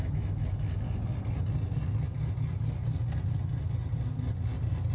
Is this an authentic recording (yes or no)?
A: yes